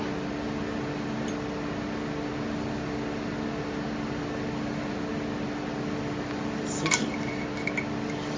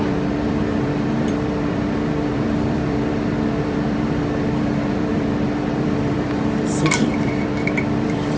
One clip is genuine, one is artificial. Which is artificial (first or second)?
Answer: second